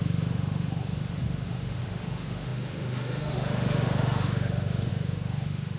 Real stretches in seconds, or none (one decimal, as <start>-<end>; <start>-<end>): none